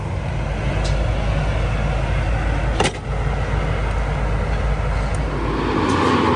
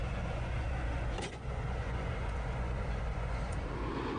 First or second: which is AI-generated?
second